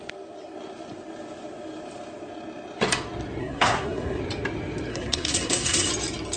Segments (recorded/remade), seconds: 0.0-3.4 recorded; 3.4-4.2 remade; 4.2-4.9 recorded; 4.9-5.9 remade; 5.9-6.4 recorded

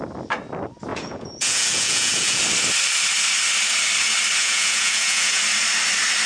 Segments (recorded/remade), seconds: 0.0-0.9 recorded; 0.9-2.4 remade; 2.4-4.4 recorded; 4.4-5.4 remade; 5.4-6.3 recorded

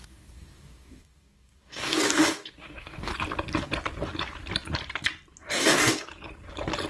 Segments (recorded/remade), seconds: 0.0-3.1 remade; 3.1-5.5 recorded; 5.5-6.1 remade; 6.1-6.9 recorded

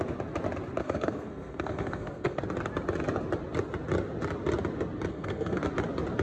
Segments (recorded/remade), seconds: 0.0-0.8 recorded; 0.8-2.4 remade; 2.4-5.1 recorded; 5.1-5.6 remade; 5.6-6.2 recorded

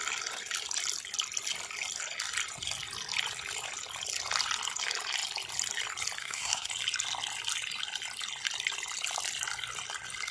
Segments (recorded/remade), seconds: 0.0-6.2 recorded; 6.2-6.7 remade; 6.7-10.3 recorded

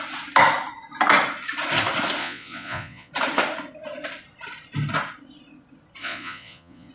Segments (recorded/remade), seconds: 0.0-2.2 recorded; 2.2-3.1 remade; 3.1-6.0 recorded; 6.0-6.9 remade